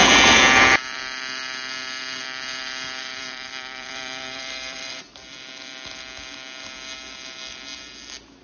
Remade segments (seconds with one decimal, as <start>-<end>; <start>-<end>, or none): 0.0-0.8; 3.1-5.1